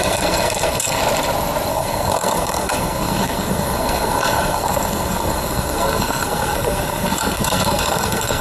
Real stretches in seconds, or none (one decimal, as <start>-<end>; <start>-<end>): 1.0-1.7